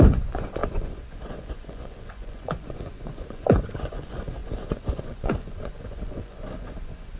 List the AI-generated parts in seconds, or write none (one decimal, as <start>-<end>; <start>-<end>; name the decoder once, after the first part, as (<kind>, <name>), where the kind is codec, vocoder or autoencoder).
0.0-7.2 (vocoder, Vocos)